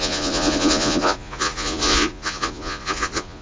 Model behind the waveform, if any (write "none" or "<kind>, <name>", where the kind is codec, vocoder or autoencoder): vocoder, Vocos